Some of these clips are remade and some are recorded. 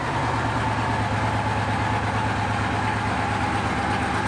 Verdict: recorded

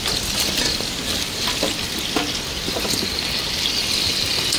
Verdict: recorded